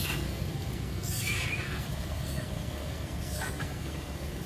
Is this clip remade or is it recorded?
remade